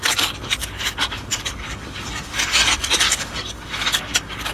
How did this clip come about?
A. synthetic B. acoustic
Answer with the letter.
A